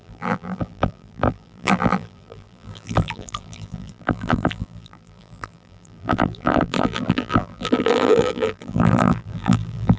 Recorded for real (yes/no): no